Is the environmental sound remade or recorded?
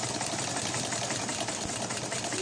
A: recorded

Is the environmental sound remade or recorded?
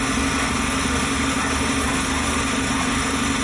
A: recorded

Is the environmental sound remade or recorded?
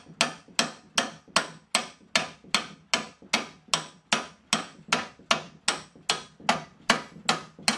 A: recorded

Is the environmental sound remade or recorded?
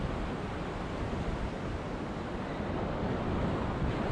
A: recorded